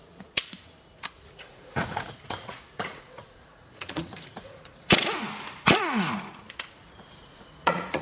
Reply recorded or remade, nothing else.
remade